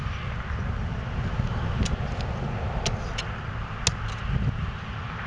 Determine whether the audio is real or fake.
real